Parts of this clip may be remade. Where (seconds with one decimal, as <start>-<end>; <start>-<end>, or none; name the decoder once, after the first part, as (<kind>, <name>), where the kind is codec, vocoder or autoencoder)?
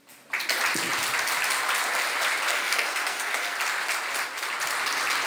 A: 2.5-3.6 (codec, SNAC)